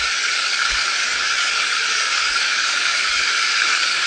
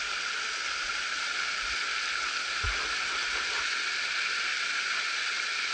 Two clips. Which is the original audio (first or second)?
second